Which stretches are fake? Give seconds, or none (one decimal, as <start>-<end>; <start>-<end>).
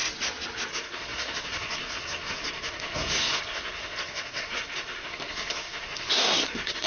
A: 0.7-6.9